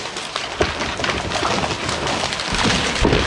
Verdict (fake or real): real